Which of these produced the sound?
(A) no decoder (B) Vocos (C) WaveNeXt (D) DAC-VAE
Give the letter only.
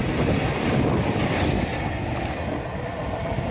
A